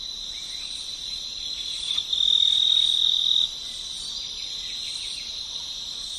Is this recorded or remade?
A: remade